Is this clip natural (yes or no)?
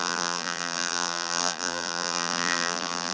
no